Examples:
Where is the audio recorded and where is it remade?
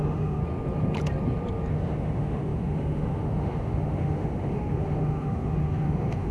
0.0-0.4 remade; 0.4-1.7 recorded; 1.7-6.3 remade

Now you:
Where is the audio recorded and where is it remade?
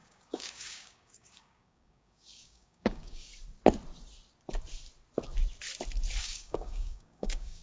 0.0-3.3 remade; 3.3-6.2 recorded; 6.2-7.6 remade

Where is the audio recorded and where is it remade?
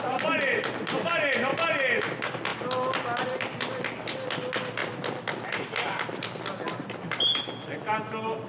0.0-8.5 recorded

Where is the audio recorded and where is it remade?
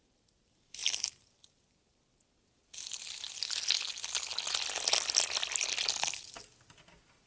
0.0-7.3 recorded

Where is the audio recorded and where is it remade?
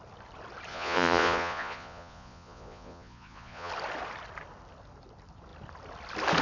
0.0-0.7 recorded; 0.7-3.7 remade; 3.7-6.4 recorded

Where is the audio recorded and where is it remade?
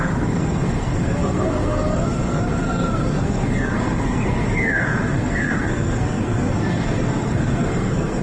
0.0-8.2 remade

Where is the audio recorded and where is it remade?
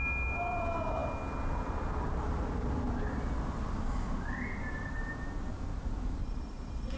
0.0-6.2 recorded; 6.2-7.0 remade